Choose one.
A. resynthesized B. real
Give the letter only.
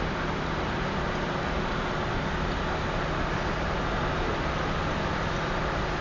B